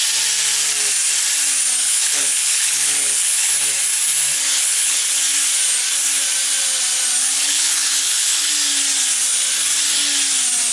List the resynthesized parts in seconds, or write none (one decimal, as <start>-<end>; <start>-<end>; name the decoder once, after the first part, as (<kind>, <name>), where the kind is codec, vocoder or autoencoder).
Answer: 1.8-3.5 (codec, HILCodec); 4.5-5.1; 7.2-8.5